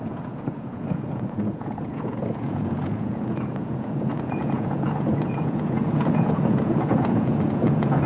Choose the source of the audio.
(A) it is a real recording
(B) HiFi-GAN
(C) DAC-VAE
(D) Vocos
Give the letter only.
D